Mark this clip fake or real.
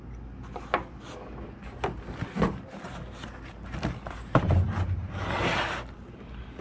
real